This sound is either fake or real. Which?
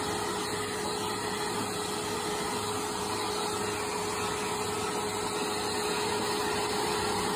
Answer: real